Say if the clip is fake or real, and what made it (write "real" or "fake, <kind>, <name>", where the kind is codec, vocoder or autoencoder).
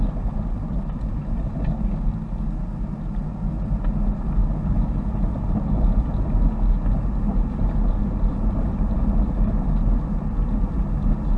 real